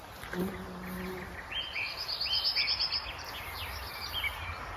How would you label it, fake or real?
real